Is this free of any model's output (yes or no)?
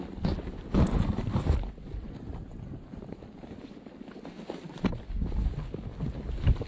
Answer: yes